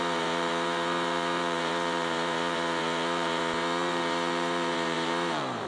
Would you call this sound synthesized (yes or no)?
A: yes